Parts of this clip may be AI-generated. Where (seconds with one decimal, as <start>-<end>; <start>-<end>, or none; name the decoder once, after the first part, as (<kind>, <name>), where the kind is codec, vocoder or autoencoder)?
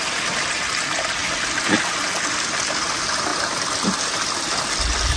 none